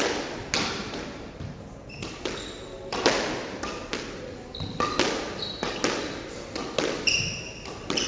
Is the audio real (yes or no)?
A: yes